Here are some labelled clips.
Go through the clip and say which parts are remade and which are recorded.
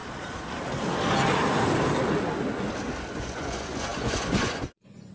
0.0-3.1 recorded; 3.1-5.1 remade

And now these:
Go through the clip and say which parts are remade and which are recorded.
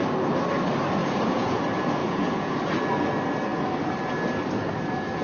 0.0-1.0 recorded; 1.0-1.6 remade; 1.6-2.0 recorded; 2.0-2.7 remade; 2.7-5.2 recorded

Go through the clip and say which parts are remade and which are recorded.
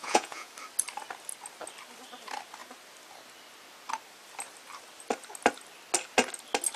0.0-0.5 remade; 0.5-6.8 recorded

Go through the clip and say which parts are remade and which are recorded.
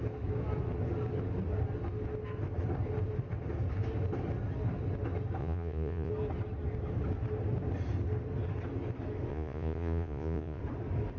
0.0-5.4 recorded; 5.4-6.1 remade; 6.1-9.3 recorded; 9.3-10.6 remade; 10.6-11.2 recorded